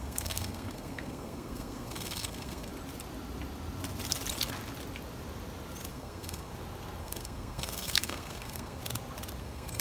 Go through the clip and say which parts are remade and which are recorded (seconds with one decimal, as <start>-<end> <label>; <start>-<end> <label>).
0.0-2.7 remade; 2.7-5.9 recorded; 5.9-6.5 remade; 6.5-7.0 recorded; 7.0-8.8 remade; 8.8-9.4 recorded; 9.4-9.8 remade